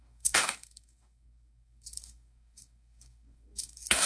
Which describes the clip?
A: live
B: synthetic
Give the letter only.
B